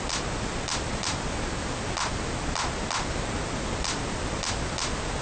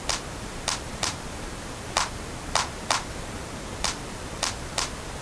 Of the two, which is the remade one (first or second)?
second